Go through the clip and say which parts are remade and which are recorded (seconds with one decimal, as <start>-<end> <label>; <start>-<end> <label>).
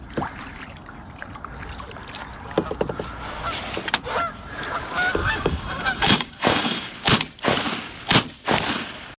0.0-5.2 recorded; 5.2-6.9 remade; 6.9-9.2 recorded